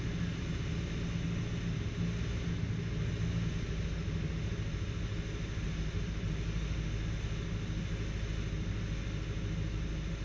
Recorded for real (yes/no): yes